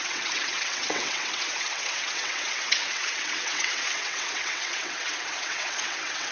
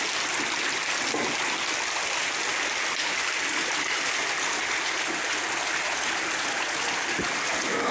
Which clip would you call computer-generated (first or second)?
first